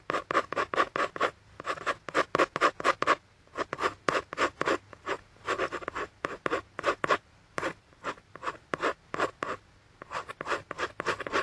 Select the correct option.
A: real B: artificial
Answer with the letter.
B